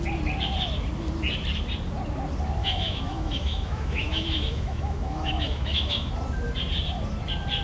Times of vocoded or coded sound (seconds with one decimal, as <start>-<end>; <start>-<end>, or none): 2.6-6.1